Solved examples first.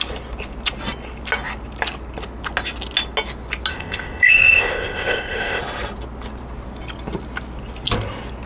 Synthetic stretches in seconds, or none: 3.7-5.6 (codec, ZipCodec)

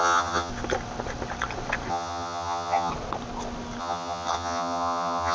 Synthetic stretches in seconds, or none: 0.0-0.5 (vocoder, HiFi-GAN); 1.9-2.9; 3.8-5.3

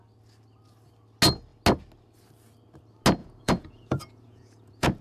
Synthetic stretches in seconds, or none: 3.2-5.0 (vocoder, Vocos)

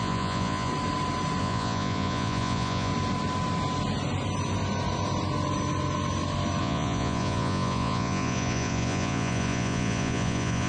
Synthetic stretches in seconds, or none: 0.0-0.7 (vocoder, Vocos); 1.4-2.9; 6.6-10.7

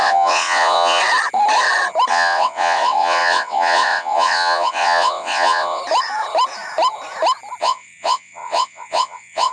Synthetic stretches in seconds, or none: 0.0-1.0 (vocoder, WaveNeXt); 2.1-5.8; 7.6-9.5

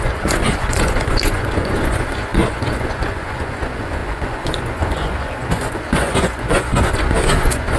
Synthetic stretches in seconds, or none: 0.0-7.8 (vocoder, Vocos)

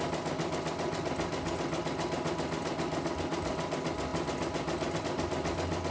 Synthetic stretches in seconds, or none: none

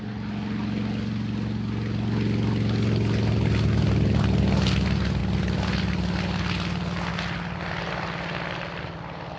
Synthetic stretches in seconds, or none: none